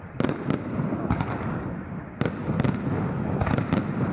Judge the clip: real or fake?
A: real